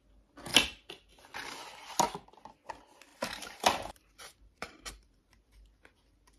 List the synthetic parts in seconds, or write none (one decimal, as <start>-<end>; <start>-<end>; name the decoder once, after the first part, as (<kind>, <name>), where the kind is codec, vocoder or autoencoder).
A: 3.1-5.2 (vocoder, BigVGAN v2)